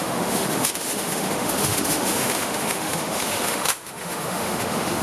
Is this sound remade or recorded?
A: remade